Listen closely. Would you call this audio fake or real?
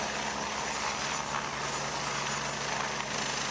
real